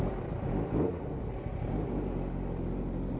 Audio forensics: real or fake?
real